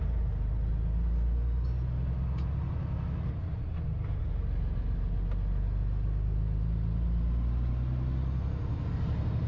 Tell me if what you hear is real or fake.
real